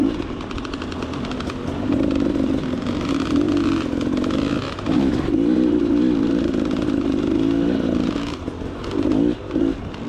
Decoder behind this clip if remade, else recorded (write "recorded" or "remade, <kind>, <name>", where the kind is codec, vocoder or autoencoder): recorded